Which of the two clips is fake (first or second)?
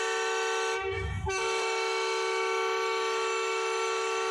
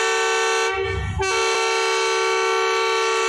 first